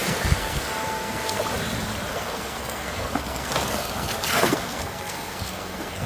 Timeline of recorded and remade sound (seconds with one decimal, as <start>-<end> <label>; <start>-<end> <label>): 0.0-1.4 remade; 1.4-2.1 recorded; 2.1-6.1 remade